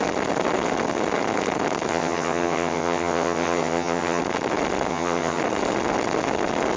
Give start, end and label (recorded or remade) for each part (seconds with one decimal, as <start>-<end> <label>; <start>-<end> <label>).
0.0-1.9 recorded; 1.9-4.2 remade; 4.2-4.9 recorded; 4.9-5.4 remade; 5.4-6.8 recorded